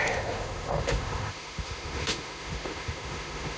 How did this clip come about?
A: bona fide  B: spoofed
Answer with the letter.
B